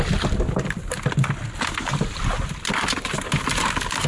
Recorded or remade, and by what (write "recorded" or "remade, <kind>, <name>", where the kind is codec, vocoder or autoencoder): recorded